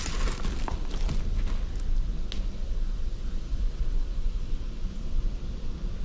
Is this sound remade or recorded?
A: recorded